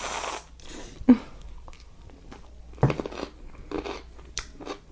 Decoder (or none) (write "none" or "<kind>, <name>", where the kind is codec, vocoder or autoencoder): none